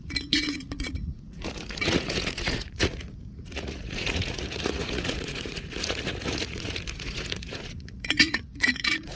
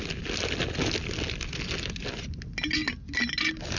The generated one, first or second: first